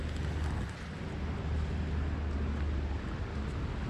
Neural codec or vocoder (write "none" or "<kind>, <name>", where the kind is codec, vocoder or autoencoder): none